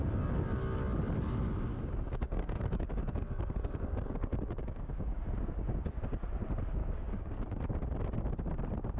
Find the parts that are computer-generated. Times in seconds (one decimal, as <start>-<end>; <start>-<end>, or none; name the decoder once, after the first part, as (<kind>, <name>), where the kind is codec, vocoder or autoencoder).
1.7-6.0 (codec, DAC); 6.8-7.4